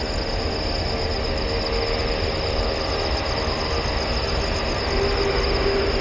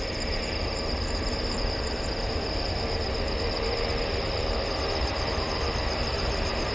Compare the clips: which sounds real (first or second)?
first